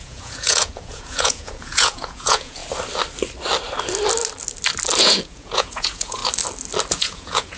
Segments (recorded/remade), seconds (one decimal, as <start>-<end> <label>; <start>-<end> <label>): 0.0-2.6 remade; 2.6-5.0 recorded; 5.0-6.2 remade; 6.2-6.9 recorded; 6.9-7.6 remade